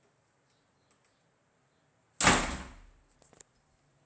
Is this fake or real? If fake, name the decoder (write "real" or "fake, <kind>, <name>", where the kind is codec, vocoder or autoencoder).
real